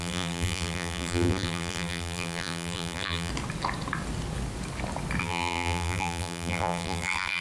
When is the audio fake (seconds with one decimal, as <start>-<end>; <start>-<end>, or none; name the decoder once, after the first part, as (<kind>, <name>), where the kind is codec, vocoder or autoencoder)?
0.0-3.3 (vocoder, BigVGAN v2); 5.2-7.4